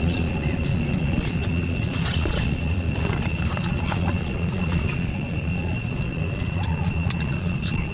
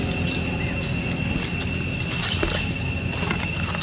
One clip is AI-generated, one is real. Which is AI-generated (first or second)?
first